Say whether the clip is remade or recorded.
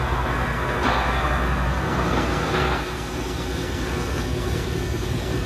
remade